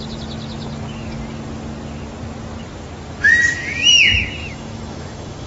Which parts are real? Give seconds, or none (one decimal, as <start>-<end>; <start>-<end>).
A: 0.0-4.4